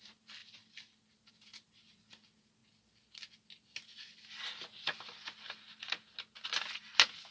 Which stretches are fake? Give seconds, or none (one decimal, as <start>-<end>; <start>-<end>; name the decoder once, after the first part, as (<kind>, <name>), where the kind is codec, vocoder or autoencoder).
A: 0.4-1.3 (vocoder, BigVGAN v2)